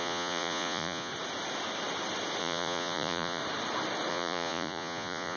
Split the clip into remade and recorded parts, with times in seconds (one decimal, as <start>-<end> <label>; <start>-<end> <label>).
0.0-1.1 remade; 1.1-2.4 recorded; 2.4-3.4 remade; 3.4-4.1 recorded; 4.1-5.4 remade

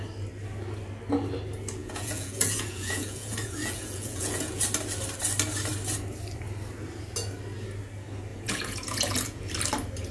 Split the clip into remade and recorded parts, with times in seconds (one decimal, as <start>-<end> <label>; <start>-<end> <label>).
0.0-1.8 recorded; 1.8-4.6 remade; 4.6-8.3 recorded; 8.3-9.5 remade; 9.5-10.1 recorded

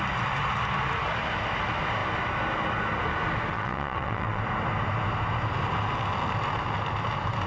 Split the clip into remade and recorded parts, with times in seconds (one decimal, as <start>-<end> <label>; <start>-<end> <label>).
0.0-3.5 recorded; 3.5-4.4 remade; 4.4-7.5 recorded

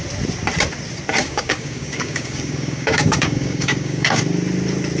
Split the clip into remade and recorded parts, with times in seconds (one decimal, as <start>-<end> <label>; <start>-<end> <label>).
0.0-1.2 recorded; 1.2-4.2 remade; 4.2-5.0 recorded

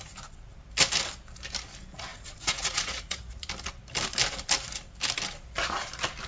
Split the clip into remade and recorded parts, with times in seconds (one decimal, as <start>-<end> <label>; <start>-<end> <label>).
0.0-2.1 recorded; 2.1-3.4 remade; 3.4-6.3 recorded